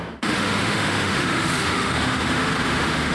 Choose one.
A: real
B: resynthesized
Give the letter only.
B